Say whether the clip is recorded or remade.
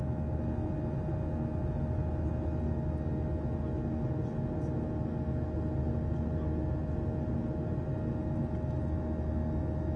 recorded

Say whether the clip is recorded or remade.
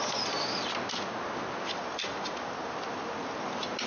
recorded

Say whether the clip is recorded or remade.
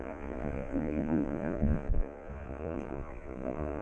remade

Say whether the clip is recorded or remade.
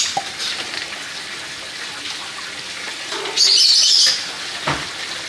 recorded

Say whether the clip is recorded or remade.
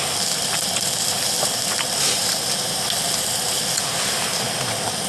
recorded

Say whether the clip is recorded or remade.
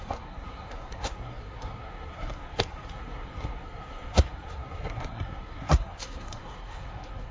remade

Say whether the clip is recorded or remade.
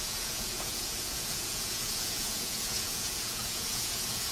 remade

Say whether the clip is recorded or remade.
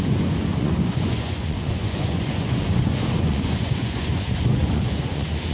remade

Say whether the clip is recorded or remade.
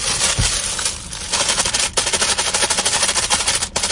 recorded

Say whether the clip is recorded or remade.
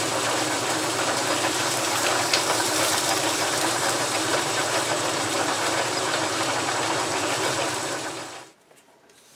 remade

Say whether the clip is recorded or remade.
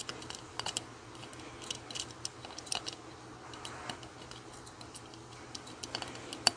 recorded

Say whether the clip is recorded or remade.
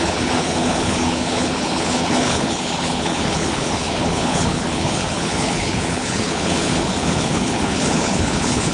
remade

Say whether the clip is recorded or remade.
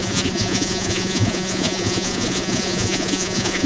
remade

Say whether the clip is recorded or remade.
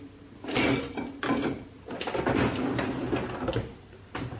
recorded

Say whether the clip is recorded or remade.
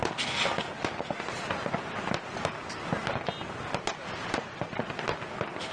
recorded